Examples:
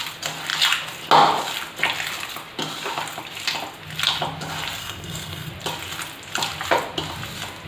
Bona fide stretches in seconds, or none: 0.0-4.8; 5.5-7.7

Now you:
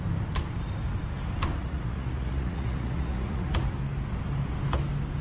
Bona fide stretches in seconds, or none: 0.0-1.6; 3.5-5.2

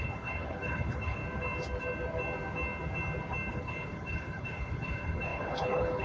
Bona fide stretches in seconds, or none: 1.2-3.5

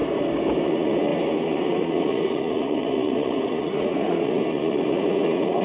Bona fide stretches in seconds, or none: 0.0-0.6

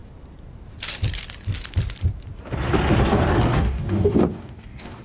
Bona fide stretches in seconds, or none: 0.0-3.5